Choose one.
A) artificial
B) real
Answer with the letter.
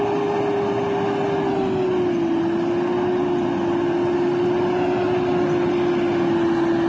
B